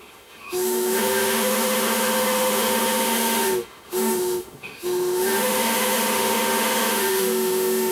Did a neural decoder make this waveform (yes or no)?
yes